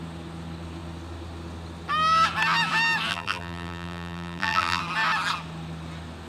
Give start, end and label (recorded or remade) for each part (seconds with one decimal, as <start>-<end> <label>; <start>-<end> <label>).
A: 0.0-3.1 recorded; 3.1-4.8 remade; 4.8-6.3 recorded